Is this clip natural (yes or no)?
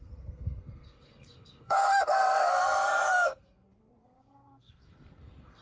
no